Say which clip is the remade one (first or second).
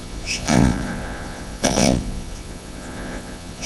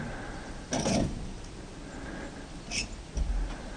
first